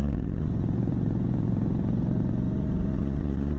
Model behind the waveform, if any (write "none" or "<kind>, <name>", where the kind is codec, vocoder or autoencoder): vocoder, Vocos